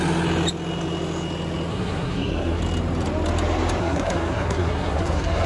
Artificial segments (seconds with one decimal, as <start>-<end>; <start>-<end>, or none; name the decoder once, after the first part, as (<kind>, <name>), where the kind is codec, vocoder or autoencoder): 1.7-2.6 (codec, SNAC); 3.8-5.5